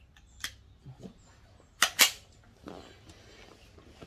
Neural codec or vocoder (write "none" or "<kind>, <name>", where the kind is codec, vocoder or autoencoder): none